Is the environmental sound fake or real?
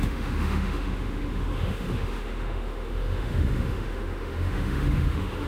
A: fake